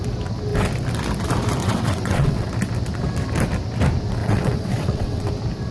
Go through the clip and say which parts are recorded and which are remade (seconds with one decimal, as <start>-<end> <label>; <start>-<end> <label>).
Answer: 0.0-1.6 recorded; 1.6-2.5 remade; 2.5-4.2 recorded; 4.2-5.3 remade; 5.3-5.7 recorded